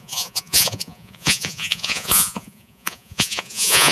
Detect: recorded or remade remade